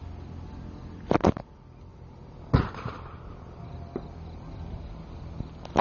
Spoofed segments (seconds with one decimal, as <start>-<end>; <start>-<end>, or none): 0.8-1.9